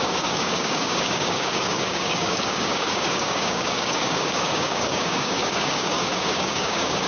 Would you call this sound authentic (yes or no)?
no